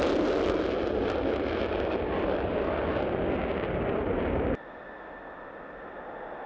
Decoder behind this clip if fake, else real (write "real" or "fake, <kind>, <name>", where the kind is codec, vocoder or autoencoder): real